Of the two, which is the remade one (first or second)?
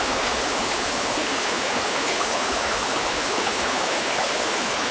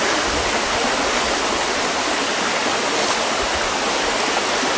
first